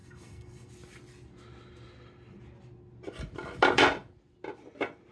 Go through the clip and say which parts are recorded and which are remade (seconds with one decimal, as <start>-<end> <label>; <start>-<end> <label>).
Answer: 0.0-0.7 remade; 0.7-5.1 recorded

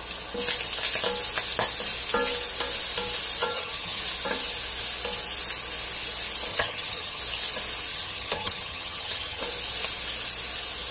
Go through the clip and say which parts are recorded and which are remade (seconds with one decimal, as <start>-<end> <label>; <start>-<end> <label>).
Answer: 0.0-3.4 recorded; 3.4-4.0 remade; 4.0-6.5 recorded; 6.5-7.2 remade; 7.2-7.9 recorded; 7.9-9.4 remade; 9.4-10.9 recorded

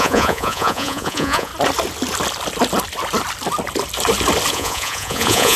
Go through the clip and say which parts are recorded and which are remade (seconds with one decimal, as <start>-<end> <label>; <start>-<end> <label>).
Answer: 0.0-1.5 remade; 1.5-4.5 recorded; 4.5-5.6 remade

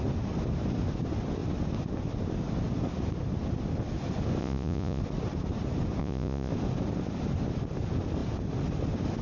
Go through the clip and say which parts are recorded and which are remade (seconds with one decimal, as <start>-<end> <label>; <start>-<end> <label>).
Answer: 0.0-4.4 recorded; 4.4-5.0 remade; 5.0-6.0 recorded; 6.0-6.5 remade; 6.5-9.2 recorded

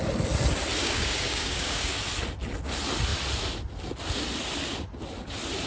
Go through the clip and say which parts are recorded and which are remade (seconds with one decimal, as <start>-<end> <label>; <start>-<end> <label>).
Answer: 0.0-0.8 recorded; 0.8-2.0 remade; 2.0-5.7 recorded

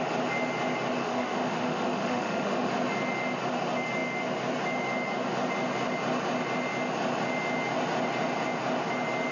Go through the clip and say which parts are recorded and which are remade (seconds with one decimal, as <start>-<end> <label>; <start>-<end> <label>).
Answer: 0.0-1.0 recorded; 1.0-2.7 remade; 2.7-9.3 recorded

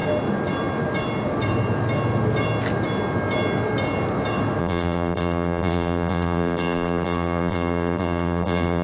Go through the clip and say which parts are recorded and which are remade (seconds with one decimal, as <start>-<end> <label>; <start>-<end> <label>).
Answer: 0.0-4.6 recorded; 4.6-8.8 remade